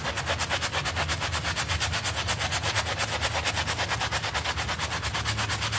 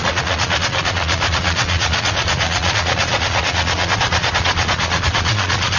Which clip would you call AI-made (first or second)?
second